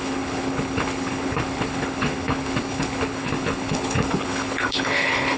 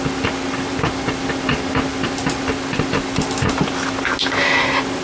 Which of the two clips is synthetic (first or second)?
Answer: first